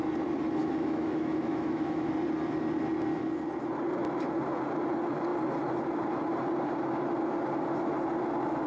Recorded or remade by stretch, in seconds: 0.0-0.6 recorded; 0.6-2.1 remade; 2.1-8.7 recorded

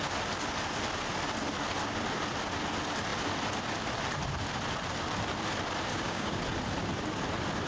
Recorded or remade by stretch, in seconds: 0.0-5.9 recorded; 5.9-6.4 remade; 6.4-7.7 recorded

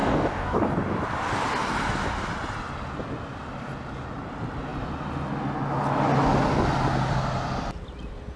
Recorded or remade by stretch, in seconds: 0.0-0.6 remade; 0.6-8.4 recorded

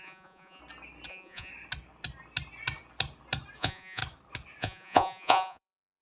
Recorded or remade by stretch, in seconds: 0.0-0.6 remade; 0.6-1.1 recorded; 1.1-1.5 remade; 1.5-3.6 recorded; 3.6-4.0 remade; 4.0-4.6 recorded; 4.6-6.0 remade